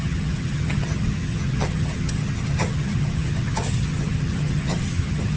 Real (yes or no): no